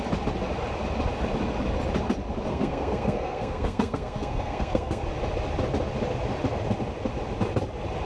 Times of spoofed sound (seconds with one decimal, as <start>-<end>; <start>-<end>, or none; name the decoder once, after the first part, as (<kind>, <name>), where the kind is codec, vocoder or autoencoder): 2.5-5.0 (codec, SNAC)